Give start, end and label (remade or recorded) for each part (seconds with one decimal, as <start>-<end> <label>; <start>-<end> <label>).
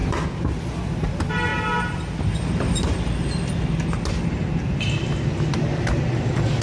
0.0-6.6 recorded